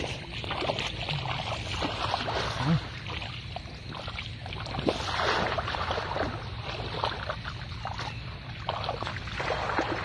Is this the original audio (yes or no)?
yes